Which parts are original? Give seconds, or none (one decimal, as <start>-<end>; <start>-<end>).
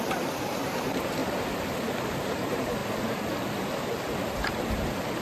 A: 1.2-2.2; 2.8-4.3